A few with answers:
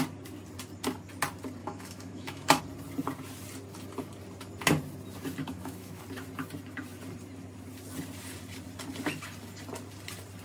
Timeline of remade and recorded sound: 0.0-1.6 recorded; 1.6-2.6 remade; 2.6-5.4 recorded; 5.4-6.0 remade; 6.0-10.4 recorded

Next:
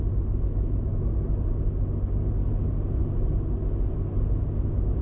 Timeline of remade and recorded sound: 0.0-5.0 recorded

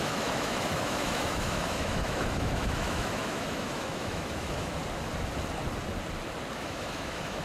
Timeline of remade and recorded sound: 0.0-4.8 remade; 4.8-6.5 recorded; 6.5-7.4 remade

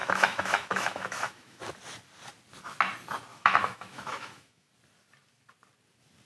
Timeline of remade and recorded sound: 0.0-1.6 remade; 1.6-3.3 recorded; 3.3-4.7 remade; 4.7-6.3 recorded

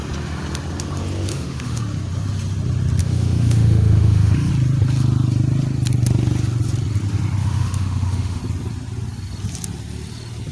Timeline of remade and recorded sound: 0.0-1.3 recorded; 1.3-1.8 remade; 1.8-3.0 recorded; 3.0-4.5 remade; 4.5-7.4 recorded; 7.4-8.4 remade; 8.4-10.5 recorded

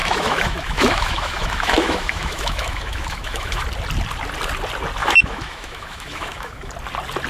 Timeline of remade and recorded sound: 0.0-3.6 remade; 3.6-5.0 recorded; 5.0-6.7 remade; 6.7-7.3 recorded